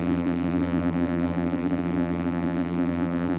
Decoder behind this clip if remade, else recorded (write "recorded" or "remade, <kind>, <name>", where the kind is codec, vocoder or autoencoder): remade, vocoder, BigVGAN v2